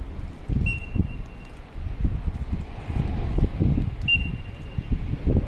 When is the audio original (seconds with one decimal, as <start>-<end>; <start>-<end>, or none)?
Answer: 0.0-0.8; 3.0-5.5

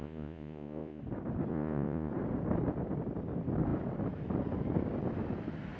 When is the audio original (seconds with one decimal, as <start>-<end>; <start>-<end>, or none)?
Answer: 1.0-1.5; 2.1-5.8

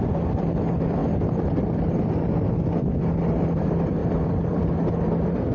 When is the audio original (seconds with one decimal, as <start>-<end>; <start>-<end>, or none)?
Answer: 0.0-5.5

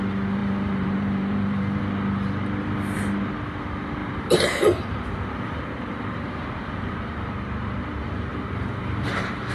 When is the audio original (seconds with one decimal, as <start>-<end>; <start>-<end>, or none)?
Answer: 0.0-0.4; 1.8-4.0; 7.3-8.3

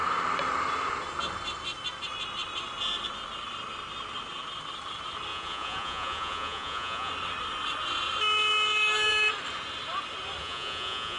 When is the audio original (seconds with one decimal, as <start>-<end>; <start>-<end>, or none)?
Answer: 0.0-5.3; 7.1-10.4

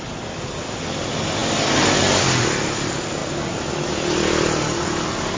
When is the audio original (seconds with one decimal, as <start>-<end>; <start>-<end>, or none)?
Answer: 0.0-5.4

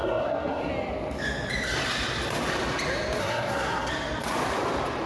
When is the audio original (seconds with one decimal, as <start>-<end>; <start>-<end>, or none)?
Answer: 0.7-3.2; 3.9-5.1

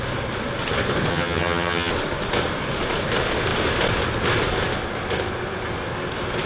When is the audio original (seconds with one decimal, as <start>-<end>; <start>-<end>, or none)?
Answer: 0.0-1.1; 1.9-6.5